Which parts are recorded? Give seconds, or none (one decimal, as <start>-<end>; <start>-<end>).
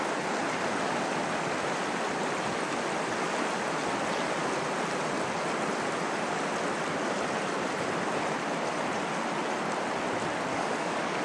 0.0-10.5